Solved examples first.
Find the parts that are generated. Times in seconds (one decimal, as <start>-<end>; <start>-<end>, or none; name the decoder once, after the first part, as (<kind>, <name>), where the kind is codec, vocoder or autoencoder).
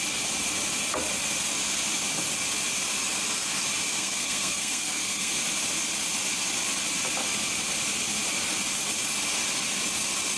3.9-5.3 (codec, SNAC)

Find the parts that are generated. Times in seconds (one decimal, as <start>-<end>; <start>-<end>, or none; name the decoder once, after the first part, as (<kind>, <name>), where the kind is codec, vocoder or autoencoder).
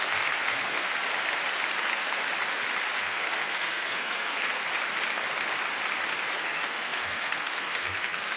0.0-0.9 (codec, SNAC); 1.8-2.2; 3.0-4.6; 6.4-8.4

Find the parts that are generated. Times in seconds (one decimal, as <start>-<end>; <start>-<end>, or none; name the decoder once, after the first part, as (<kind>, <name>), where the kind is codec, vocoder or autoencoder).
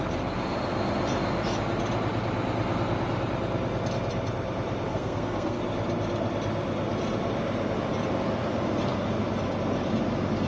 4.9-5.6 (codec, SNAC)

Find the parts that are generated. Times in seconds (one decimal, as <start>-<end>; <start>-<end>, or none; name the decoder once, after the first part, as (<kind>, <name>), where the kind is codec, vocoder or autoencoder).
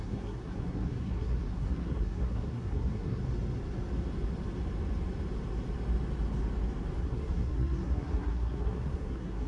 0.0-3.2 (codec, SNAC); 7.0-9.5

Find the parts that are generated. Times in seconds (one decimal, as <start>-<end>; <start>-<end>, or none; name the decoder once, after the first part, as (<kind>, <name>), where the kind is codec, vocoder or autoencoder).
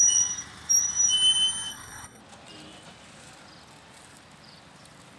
1.7-2.2 (codec, SNAC)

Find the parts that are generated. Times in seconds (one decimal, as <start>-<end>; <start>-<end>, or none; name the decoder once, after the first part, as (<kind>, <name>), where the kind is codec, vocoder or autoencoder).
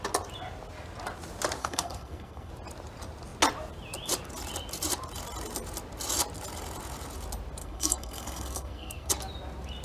1.6-2.5 (codec, SNAC); 7.6-9.1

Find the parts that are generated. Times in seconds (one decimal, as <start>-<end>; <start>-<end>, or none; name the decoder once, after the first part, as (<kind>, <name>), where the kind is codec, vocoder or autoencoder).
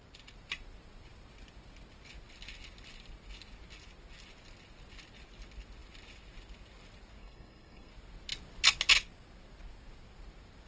7.2-7.9 (codec, SNAC)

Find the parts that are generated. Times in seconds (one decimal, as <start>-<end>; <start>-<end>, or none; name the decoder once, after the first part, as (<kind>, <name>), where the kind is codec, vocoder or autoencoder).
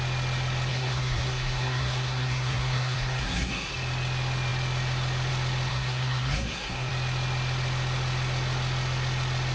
0.7-3.7 (codec, SNAC); 5.7-6.9